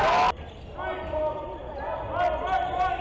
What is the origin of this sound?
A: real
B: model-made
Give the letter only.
A